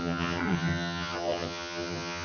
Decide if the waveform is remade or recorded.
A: remade